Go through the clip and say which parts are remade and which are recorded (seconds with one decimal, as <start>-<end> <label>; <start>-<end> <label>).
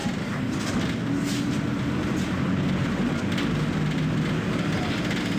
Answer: 0.0-5.4 recorded